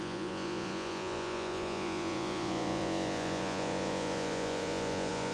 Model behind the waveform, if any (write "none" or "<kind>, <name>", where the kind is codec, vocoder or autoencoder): vocoder, Vocos